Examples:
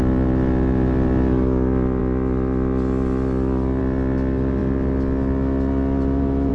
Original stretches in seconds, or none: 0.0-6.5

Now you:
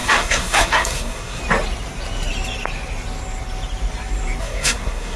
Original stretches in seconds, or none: 1.4-4.4

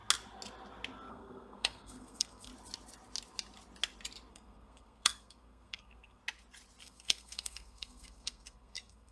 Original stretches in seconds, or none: 0.0-1.1; 2.5-4.3; 6.2-6.8

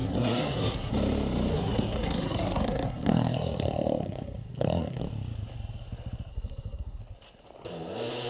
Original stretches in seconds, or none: 0.9-1.5; 5.0-6.3; 7.0-8.3

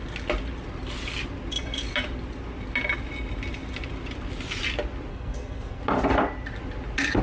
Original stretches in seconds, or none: 0.0-5.1; 5.8-7.2